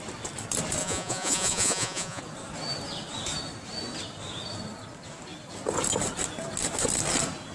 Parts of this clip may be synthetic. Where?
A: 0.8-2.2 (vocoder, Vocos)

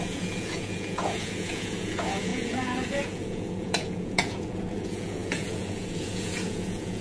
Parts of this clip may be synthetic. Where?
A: 0.0-7.0 (vocoder, Vocos)